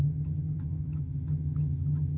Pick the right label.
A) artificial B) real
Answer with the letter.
A